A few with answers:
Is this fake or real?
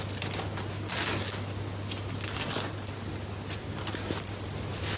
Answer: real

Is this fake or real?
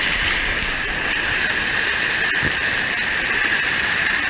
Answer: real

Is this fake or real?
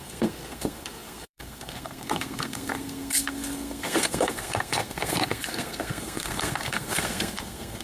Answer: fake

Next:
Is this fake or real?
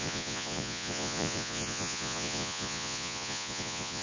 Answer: fake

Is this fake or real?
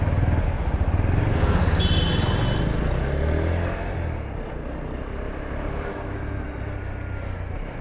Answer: real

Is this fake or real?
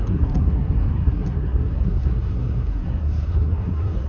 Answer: fake